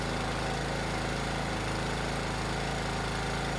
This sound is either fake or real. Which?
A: real